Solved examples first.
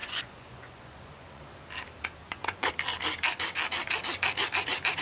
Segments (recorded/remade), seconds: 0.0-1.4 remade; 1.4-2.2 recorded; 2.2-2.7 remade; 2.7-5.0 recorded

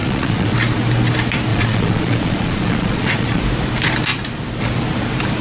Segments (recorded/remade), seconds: 0.0-0.5 remade; 0.5-1.5 recorded; 1.5-3.4 remade; 3.4-5.4 recorded

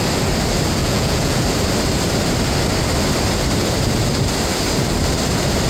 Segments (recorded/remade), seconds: 0.0-0.8 recorded; 0.8-1.4 remade; 1.4-5.7 recorded